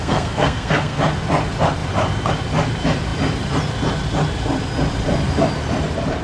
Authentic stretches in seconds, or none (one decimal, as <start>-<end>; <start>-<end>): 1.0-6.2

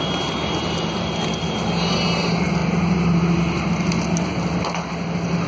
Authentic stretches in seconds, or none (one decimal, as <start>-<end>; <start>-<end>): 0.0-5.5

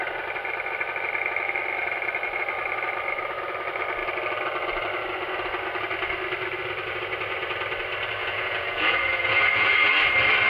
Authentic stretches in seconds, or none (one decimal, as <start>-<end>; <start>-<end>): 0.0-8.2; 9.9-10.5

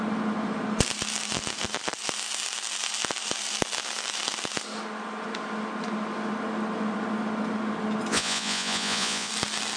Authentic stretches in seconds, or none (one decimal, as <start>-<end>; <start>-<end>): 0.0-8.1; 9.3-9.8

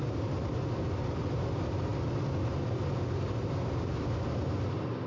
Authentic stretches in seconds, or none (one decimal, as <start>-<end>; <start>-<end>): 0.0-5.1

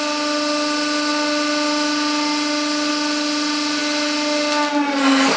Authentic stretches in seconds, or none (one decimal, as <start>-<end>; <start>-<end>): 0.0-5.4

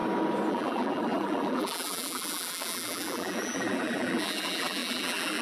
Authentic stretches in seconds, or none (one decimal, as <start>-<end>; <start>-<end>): 0.0-0.5